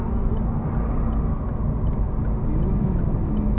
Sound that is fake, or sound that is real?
real